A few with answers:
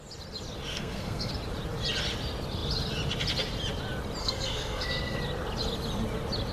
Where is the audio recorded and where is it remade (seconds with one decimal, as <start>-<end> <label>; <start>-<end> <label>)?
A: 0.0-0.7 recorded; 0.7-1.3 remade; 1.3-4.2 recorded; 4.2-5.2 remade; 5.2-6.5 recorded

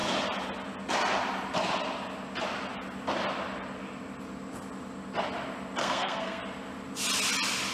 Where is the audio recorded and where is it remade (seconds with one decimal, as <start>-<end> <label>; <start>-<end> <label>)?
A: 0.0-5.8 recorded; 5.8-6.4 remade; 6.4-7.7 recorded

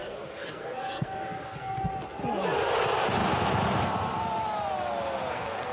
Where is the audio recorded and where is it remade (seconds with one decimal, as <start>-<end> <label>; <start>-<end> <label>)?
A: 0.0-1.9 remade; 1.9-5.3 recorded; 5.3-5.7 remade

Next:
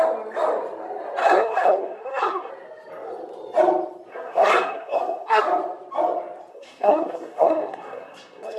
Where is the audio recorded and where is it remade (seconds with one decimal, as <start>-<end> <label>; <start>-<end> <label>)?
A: 0.0-1.2 recorded; 1.2-2.5 remade; 2.5-4.1 recorded; 4.1-5.4 remade; 5.4-6.5 recorded; 6.5-8.6 remade